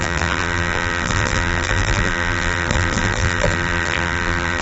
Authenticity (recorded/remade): remade